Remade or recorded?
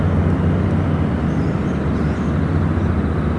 recorded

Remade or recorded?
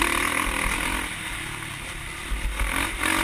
recorded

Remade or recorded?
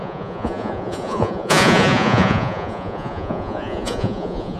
remade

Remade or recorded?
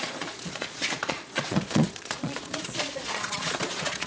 remade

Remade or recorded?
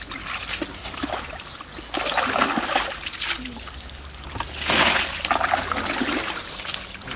recorded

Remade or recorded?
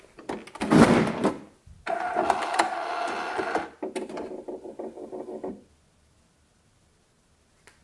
recorded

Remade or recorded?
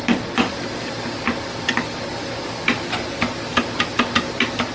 recorded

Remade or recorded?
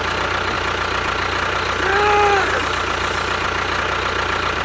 recorded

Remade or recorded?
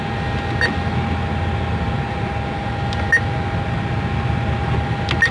recorded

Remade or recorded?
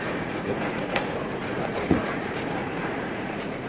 remade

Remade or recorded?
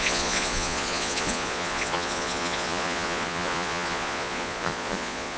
remade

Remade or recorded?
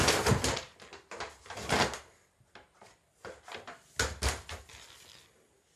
recorded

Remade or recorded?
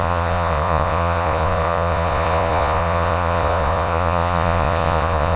remade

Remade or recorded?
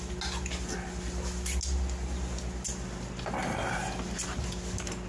recorded